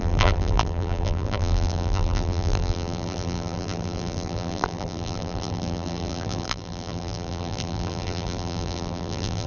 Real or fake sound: fake